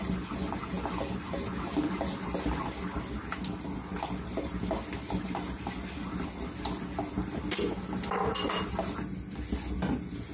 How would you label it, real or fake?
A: real